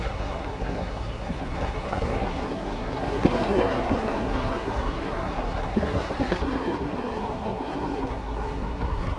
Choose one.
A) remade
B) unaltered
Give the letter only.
A